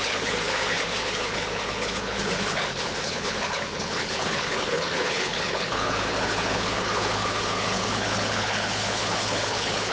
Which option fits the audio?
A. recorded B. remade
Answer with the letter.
B